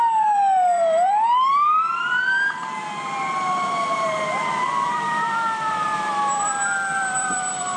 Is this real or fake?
fake